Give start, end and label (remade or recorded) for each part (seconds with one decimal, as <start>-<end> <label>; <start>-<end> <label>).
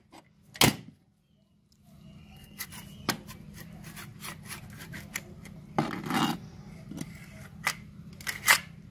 0.0-2.2 recorded; 2.2-2.7 remade; 2.7-8.9 recorded